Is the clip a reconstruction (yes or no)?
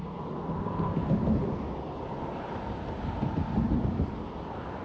no